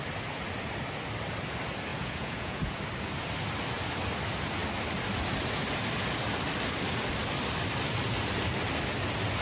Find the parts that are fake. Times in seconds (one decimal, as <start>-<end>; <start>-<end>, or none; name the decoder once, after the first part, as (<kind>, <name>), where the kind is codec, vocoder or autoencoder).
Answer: 1.9-2.8 (vocoder, Vocos)